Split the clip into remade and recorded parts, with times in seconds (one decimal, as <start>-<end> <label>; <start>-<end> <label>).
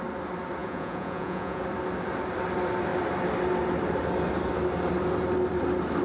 0.0-0.6 recorded; 0.6-1.6 remade; 1.6-6.0 recorded